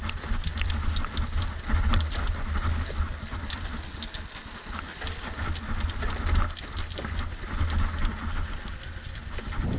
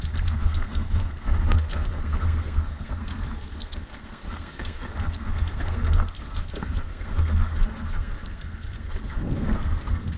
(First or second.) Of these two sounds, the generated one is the second